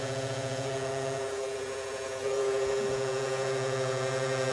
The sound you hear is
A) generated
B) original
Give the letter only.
A